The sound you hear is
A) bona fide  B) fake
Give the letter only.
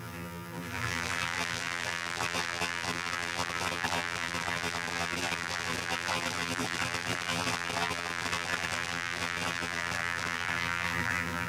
B